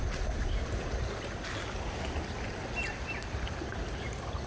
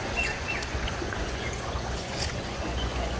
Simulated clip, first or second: second